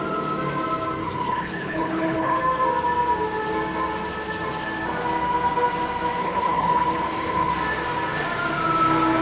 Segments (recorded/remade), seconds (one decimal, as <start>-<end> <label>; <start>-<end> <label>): 0.0-1.0 recorded; 1.0-2.4 remade; 2.4-6.2 recorded; 6.2-7.5 remade; 7.5-9.2 recorded